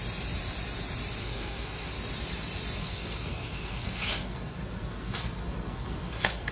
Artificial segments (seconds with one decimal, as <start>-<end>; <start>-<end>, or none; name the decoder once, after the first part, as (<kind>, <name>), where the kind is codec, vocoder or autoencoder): 1.2-1.9 (codec, SNAC); 2.8-6.5